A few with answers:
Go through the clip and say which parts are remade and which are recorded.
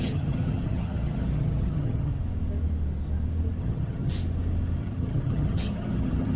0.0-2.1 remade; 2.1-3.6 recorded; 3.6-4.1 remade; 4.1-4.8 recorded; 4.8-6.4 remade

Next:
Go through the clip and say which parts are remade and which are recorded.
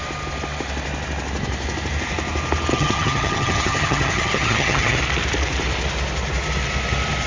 0.0-2.7 recorded; 2.7-5.0 remade; 5.0-7.3 recorded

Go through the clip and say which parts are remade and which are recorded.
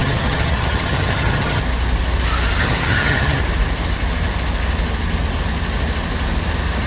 0.0-1.6 remade; 1.6-2.6 recorded; 2.6-3.4 remade; 3.4-6.9 recorded